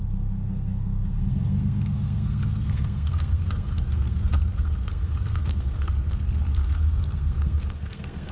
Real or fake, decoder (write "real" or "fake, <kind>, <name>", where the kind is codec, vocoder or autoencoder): fake, codec, SNAC